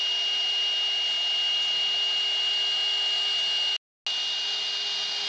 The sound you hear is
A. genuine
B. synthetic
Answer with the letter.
A